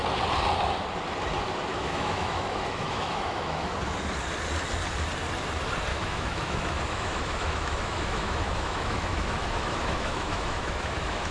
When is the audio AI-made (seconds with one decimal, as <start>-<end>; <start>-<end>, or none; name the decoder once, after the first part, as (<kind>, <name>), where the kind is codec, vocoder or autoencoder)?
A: 1.7-3.7 (autoencoder, DAC-VAE); 5.9-11.3

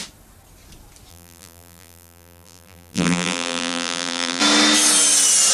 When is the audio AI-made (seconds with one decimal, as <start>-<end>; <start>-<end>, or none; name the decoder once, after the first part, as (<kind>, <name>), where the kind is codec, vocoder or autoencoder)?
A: 1.1-4.4 (vocoder, BigVGAN v2)

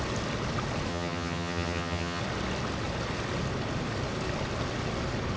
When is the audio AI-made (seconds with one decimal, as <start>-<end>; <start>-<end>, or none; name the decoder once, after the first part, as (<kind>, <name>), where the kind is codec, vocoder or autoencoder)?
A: 0.9-2.2 (vocoder, HiFi-GAN)

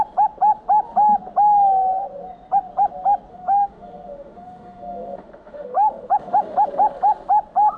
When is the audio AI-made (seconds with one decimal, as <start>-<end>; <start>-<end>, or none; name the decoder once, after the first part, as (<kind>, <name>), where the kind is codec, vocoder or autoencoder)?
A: 3.3-6.7 (autoencoder, DAC-VAE)

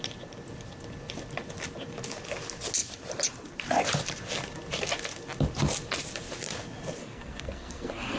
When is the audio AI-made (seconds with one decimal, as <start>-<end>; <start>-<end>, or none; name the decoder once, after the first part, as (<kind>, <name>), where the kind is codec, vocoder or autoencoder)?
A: 7.0-8.2 (codec, SNAC)